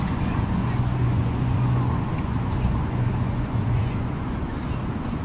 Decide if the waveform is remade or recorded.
remade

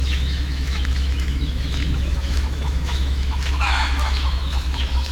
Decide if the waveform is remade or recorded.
remade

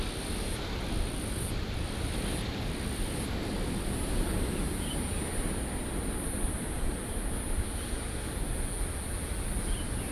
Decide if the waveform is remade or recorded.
recorded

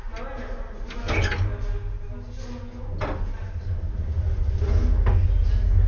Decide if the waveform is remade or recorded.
recorded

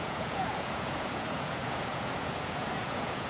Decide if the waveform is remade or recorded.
remade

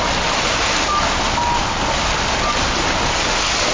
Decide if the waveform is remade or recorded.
recorded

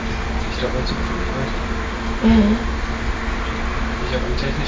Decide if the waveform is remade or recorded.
recorded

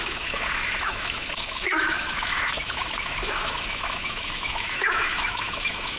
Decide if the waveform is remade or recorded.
remade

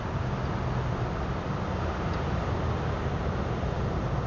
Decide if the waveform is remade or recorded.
recorded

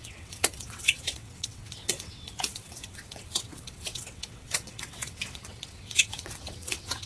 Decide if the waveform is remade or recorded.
remade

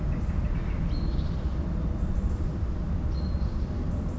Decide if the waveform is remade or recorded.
recorded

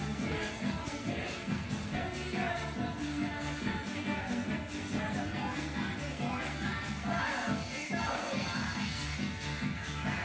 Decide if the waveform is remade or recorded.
remade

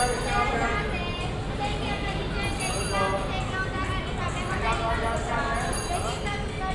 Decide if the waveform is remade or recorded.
recorded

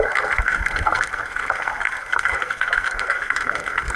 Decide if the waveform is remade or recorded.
remade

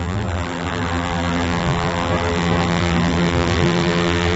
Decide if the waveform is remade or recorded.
remade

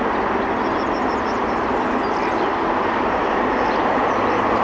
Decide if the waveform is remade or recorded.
recorded